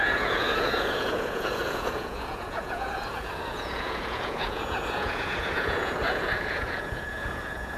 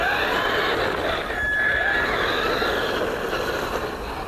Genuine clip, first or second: second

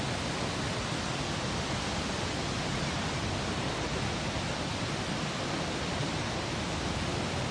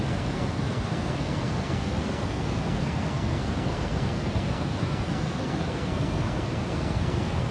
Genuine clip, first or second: first